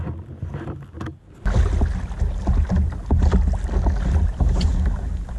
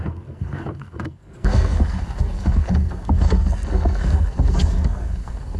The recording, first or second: first